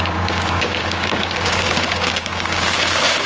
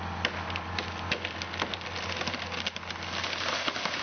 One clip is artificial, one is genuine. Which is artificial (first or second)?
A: first